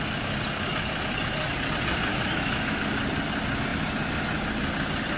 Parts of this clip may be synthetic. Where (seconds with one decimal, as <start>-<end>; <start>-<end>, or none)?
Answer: 2.1-2.8

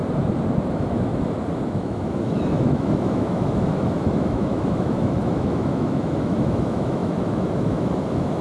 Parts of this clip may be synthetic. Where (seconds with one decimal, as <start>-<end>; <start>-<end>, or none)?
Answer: 0.7-1.1; 1.7-8.4

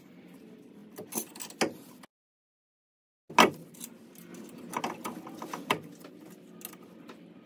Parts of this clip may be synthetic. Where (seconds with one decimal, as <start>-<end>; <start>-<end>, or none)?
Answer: none